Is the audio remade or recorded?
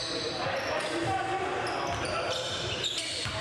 recorded